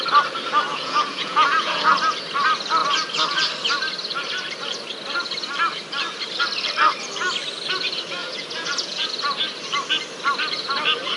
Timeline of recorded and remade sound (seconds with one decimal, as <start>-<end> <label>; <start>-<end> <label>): 0.0-0.7 recorded; 0.7-1.9 remade; 1.9-8.2 recorded; 8.2-9.1 remade; 9.1-11.2 recorded